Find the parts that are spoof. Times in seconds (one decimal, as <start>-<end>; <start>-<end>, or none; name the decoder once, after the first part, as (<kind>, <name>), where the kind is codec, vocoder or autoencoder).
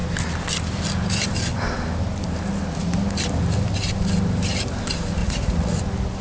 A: 5.2-5.8 (vocoder, Vocos)